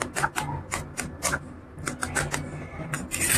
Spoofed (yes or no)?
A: no